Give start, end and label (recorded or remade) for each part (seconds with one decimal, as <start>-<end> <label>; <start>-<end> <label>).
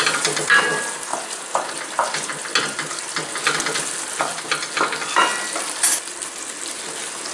0.0-7.3 recorded